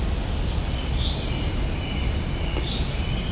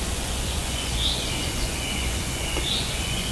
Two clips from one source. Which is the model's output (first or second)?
second